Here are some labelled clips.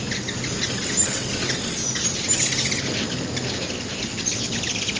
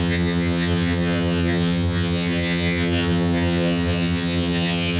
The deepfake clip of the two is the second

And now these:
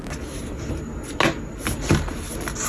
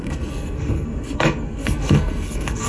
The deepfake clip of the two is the second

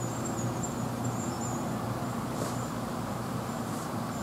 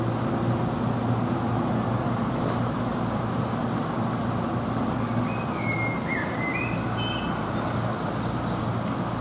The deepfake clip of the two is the first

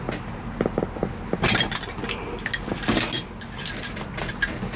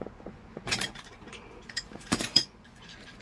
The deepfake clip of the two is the second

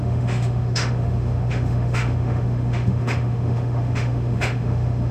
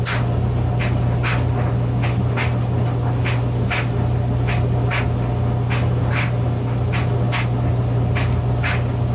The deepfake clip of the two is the first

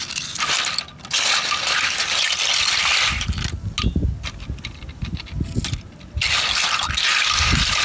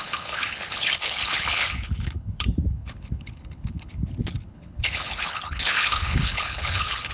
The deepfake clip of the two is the second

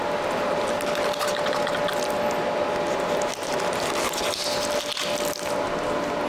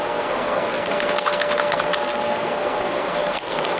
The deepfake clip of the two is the second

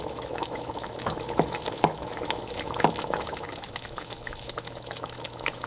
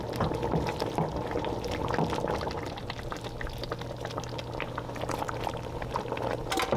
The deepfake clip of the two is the first